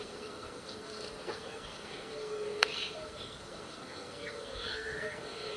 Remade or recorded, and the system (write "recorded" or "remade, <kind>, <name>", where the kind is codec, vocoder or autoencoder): remade, codec, SNAC